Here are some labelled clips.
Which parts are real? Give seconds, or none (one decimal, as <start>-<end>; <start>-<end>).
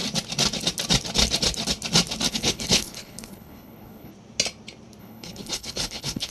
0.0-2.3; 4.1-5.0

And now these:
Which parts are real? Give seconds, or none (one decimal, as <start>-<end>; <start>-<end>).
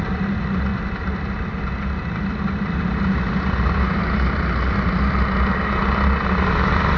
0.0-7.0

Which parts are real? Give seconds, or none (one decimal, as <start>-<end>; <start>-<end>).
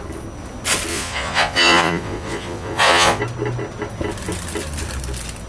0.0-0.9; 3.2-5.5